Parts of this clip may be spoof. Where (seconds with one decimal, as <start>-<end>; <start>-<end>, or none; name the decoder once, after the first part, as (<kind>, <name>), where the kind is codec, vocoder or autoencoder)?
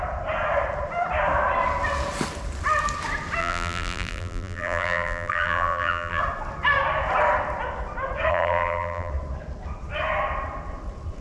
3.4-6.2 (vocoder, BigVGAN v2); 8.3-9.1